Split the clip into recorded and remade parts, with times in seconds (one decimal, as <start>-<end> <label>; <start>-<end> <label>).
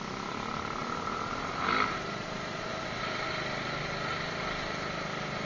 0.0-0.8 recorded; 0.8-3.0 remade; 3.0-5.5 recorded